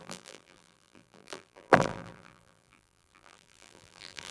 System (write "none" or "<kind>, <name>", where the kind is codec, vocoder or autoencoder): vocoder, BigVGAN v2